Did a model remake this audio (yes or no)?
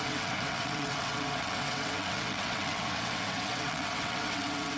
yes